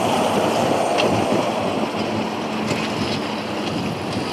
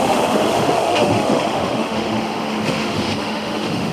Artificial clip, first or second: second